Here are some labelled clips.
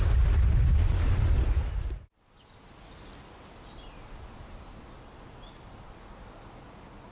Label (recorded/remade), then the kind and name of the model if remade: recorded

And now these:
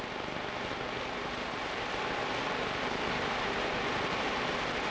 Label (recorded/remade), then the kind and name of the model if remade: recorded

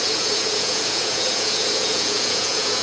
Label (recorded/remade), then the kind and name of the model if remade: remade, vocoder, Vocos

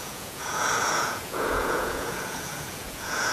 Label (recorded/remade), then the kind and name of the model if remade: remade, vocoder, Vocos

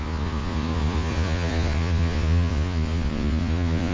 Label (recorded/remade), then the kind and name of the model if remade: remade, vocoder, Vocos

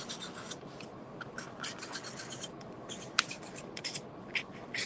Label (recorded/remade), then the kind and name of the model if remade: recorded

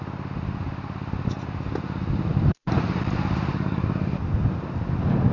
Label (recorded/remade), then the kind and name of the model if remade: recorded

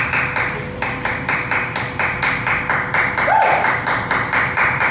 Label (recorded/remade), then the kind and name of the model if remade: recorded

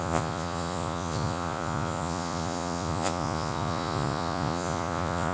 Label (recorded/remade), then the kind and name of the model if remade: remade, vocoder, Vocos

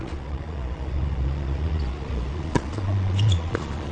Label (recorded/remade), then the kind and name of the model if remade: remade, vocoder, Vocos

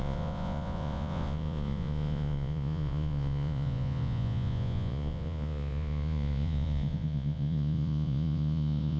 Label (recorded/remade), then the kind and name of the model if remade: remade, vocoder, Vocos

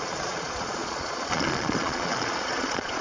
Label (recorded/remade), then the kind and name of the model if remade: remade, vocoder, Vocos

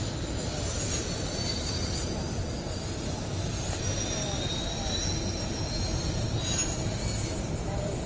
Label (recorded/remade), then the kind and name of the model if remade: recorded